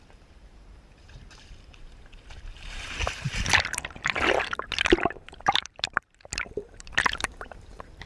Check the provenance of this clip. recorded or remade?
remade